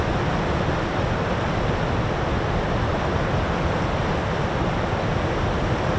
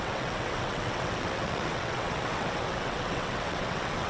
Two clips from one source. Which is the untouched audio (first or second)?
first